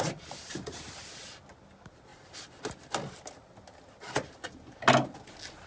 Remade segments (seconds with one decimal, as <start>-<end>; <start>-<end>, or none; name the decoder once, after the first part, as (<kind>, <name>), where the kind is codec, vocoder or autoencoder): none